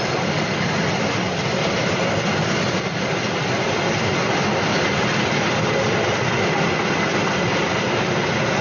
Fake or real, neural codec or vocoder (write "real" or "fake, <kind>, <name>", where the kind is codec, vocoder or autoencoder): real